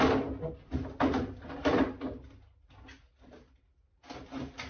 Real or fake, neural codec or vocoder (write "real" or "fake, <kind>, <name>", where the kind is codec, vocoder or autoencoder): real